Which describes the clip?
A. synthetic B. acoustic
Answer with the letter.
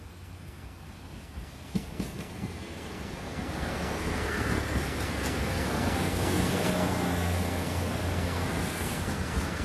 A